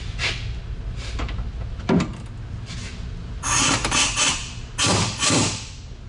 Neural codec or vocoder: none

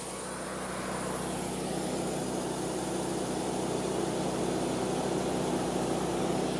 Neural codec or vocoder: none